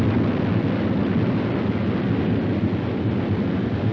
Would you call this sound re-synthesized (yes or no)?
no